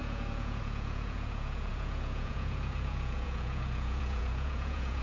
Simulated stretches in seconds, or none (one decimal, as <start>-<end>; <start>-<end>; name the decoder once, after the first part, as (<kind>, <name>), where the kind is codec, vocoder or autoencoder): 0.0-5.0 (vocoder, Vocos)